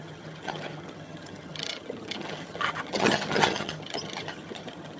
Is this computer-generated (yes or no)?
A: yes